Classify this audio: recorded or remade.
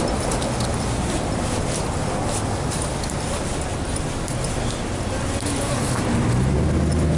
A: recorded